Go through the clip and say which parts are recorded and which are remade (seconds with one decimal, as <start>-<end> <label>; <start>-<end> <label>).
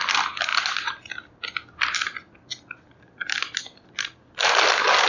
0.0-5.1 recorded